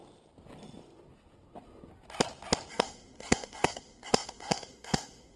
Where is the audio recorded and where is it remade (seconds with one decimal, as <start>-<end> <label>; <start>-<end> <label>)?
0.0-2.7 recorded; 2.7-5.4 remade